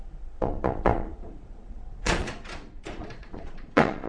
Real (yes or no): no